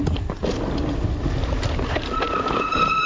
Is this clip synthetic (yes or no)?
no